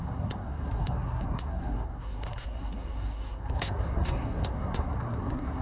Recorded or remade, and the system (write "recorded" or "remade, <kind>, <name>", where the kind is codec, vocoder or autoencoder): remade, codec, SNAC